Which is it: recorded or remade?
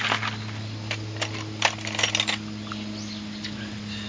recorded